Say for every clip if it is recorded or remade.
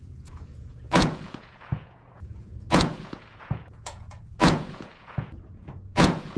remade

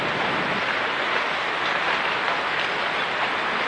recorded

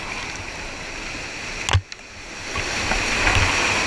recorded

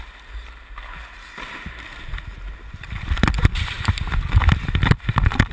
recorded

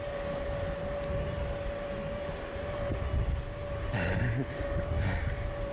recorded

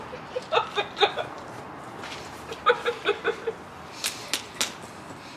recorded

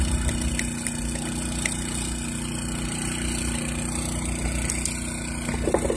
recorded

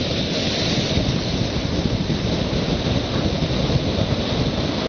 recorded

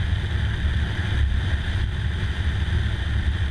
recorded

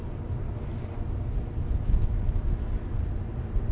recorded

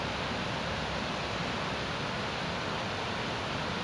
recorded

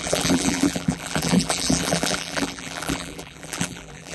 remade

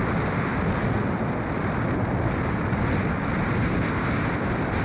recorded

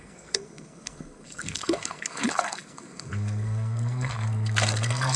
remade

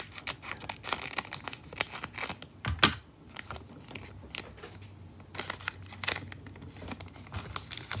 recorded